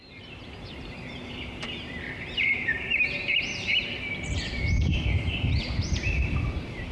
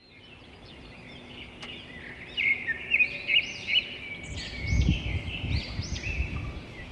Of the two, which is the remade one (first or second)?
first